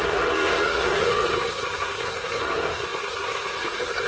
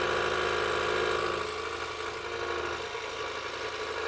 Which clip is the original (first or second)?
second